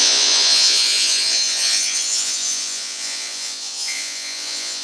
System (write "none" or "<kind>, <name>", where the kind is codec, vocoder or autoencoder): vocoder, Vocos